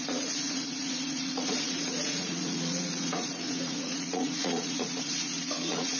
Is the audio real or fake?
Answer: fake